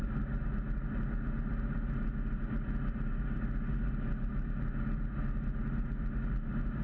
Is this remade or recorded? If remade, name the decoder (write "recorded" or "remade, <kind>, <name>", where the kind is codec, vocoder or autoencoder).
recorded